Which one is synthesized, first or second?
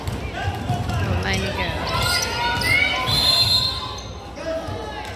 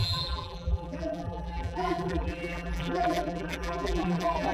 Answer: second